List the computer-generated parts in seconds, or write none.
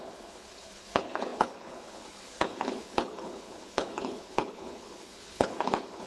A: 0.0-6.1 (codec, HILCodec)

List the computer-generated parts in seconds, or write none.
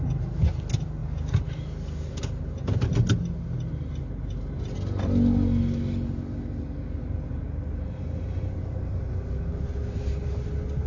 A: none